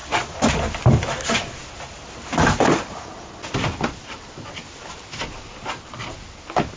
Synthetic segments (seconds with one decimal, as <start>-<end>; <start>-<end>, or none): none